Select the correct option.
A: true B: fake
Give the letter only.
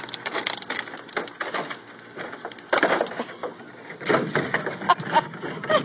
A